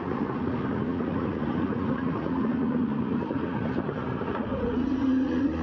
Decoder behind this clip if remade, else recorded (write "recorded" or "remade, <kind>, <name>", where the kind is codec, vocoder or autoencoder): remade, vocoder, Vocos